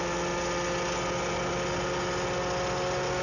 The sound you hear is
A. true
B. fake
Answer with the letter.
A